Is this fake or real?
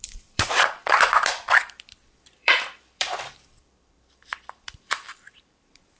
fake